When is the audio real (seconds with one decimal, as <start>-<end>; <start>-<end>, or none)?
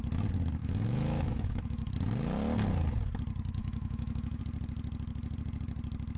0.0-0.6; 1.9-3.6; 4.4-6.2